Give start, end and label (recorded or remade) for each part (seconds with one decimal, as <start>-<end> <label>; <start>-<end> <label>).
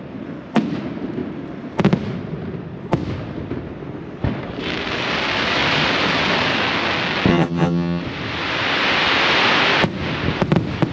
0.0-7.3 recorded; 7.3-8.0 remade; 8.0-10.9 recorded